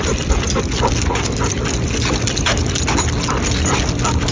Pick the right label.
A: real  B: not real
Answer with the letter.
A